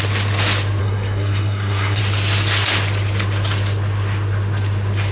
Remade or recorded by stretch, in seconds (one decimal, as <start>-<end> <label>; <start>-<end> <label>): 0.0-0.8 recorded; 0.8-2.0 remade; 2.0-5.1 recorded

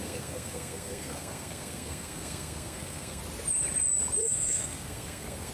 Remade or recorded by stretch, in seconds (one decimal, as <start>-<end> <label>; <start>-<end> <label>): 0.0-3.2 remade; 3.2-4.2 recorded; 4.2-5.5 remade

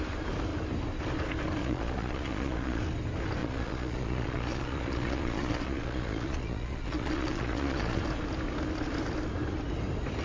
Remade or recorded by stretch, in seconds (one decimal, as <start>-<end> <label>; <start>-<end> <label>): 0.0-1.6 recorded; 1.6-2.8 remade; 2.8-3.4 recorded; 3.4-8.0 remade; 8.0-10.2 recorded

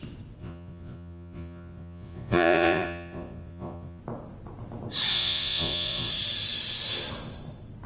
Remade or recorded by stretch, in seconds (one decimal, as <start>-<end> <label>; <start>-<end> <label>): 0.0-0.4 recorded; 0.4-4.0 remade; 4.0-5.1 recorded; 5.1-6.1 remade; 6.1-7.9 recorded